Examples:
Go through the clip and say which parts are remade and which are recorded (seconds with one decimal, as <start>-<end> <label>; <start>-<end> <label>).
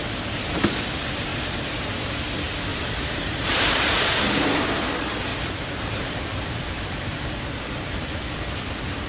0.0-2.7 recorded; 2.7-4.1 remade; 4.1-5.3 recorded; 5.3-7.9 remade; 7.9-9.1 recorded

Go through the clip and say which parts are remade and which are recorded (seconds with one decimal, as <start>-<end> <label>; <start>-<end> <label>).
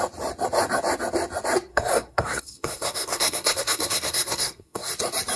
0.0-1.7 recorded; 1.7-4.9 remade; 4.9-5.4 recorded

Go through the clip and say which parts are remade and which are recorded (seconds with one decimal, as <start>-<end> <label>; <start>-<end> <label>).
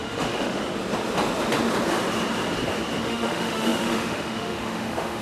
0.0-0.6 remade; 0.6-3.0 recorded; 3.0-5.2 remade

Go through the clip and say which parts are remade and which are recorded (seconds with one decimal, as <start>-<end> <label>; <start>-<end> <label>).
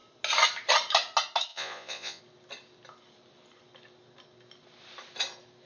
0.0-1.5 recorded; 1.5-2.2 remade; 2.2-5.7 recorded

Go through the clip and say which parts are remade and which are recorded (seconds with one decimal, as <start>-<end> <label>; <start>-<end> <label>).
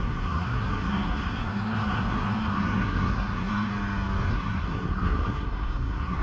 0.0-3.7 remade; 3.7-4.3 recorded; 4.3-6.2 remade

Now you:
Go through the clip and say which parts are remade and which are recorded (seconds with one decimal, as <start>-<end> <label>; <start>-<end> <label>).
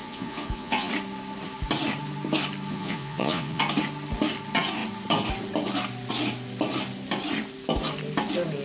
0.0-0.9 remade; 0.9-2.7 recorded; 2.7-3.6 remade; 3.6-8.6 recorded